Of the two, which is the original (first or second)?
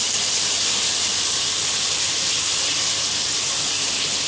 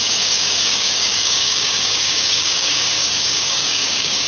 first